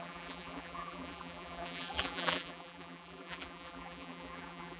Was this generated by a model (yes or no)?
yes